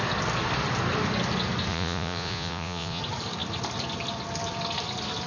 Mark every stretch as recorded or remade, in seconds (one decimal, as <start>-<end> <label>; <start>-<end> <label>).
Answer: 0.0-1.7 recorded; 1.7-3.0 remade; 3.0-5.3 recorded